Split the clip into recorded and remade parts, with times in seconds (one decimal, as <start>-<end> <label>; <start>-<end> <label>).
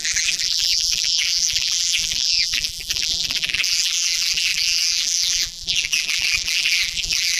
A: 0.0-7.4 remade